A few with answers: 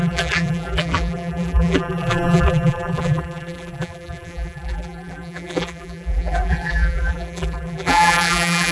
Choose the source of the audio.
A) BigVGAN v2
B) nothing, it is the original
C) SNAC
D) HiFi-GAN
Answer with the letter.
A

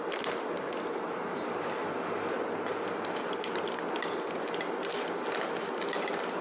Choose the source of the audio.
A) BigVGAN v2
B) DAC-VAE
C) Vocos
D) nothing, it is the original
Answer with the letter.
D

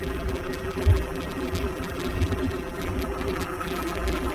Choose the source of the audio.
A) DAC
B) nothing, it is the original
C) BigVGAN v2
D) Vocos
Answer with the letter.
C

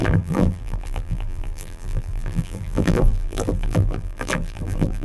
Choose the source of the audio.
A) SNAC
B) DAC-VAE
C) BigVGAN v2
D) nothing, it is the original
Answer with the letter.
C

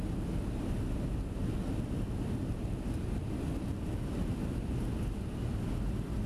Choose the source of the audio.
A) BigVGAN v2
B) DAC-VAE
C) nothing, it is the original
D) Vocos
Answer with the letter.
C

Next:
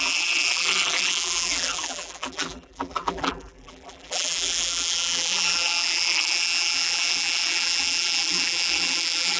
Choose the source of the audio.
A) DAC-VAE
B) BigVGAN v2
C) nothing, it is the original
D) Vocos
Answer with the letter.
B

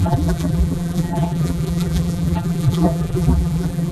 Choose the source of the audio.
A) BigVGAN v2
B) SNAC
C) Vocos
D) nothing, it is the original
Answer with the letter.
A